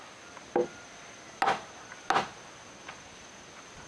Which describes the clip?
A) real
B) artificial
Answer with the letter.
A